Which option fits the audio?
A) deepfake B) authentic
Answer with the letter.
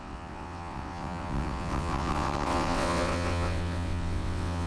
A